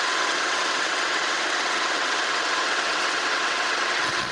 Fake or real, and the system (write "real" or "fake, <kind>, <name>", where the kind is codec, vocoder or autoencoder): fake, vocoder, WaveNeXt